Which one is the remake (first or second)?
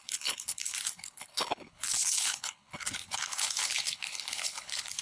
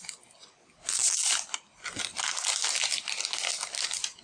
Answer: first